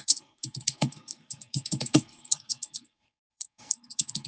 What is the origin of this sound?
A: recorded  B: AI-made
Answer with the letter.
B